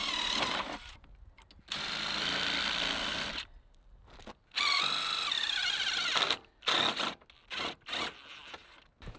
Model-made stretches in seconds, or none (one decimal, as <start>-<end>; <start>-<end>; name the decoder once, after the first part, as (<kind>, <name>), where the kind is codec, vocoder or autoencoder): none